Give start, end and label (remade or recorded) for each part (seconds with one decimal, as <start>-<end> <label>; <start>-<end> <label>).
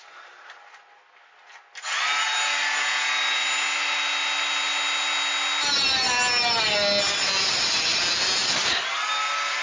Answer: 0.0-9.6 recorded